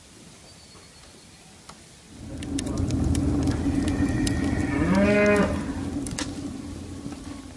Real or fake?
real